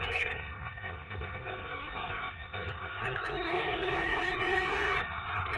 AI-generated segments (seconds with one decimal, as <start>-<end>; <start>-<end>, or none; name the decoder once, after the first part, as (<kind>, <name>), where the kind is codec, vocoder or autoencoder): 0.0-5.6 (codec, SNAC)